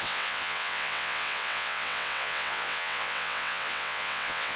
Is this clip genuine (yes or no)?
no